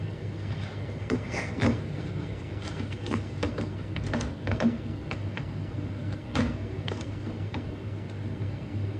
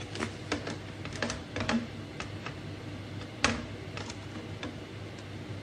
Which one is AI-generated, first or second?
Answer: first